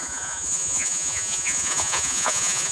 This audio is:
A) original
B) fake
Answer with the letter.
B